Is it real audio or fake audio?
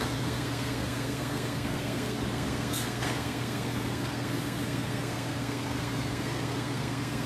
fake